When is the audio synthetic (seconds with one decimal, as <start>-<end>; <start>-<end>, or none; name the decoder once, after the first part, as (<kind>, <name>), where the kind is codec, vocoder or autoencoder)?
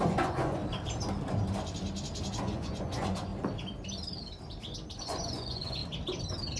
0.0-0.6 (vocoder, Vocos); 2.4-3.3; 5.0-5.8